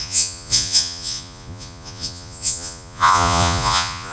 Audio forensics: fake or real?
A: fake